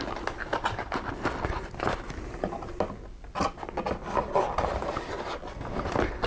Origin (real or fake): real